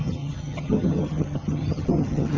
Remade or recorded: remade